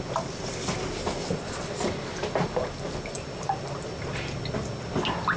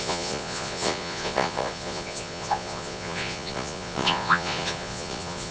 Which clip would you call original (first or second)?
first